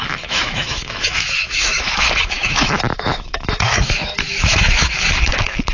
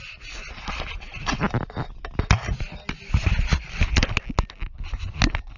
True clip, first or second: second